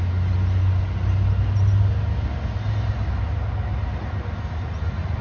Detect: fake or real real